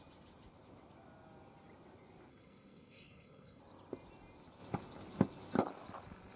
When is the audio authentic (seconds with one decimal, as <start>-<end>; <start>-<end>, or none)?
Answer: 0.0-2.3; 3.6-6.4